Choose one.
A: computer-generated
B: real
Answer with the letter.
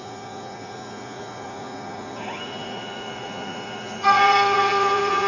A